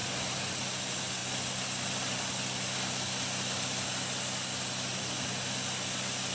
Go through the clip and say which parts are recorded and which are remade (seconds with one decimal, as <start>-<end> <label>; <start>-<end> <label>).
0.0-6.3 recorded